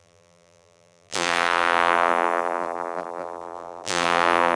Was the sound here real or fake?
fake